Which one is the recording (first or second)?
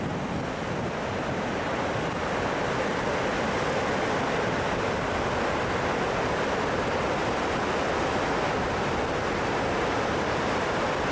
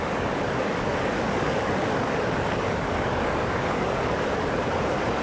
first